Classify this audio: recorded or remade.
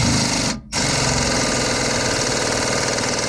recorded